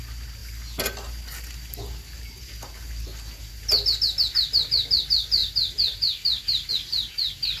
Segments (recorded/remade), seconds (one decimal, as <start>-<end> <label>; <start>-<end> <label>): 0.0-7.6 recorded